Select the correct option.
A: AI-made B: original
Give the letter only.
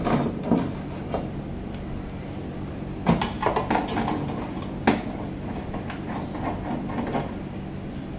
B